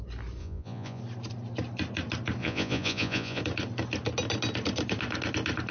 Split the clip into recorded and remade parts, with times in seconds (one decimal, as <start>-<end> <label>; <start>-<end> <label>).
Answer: 0.0-0.4 recorded; 0.4-1.0 remade; 1.0-2.4 recorded; 2.4-3.4 remade; 3.4-5.7 recorded